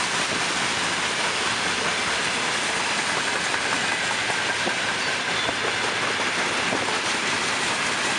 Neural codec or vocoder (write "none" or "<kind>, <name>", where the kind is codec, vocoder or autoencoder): none